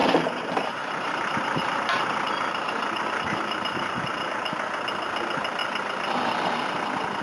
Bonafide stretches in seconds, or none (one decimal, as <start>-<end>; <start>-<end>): 4.3-7.2